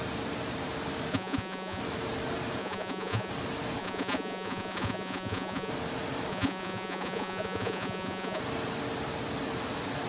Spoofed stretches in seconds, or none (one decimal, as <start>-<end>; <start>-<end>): 1.1-1.8; 2.6-3.3; 3.8-5.7; 6.3-8.4